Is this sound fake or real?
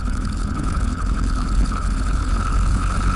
fake